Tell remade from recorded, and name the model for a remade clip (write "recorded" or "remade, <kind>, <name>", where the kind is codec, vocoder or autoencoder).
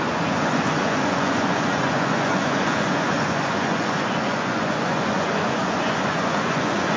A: remade, vocoder, Vocos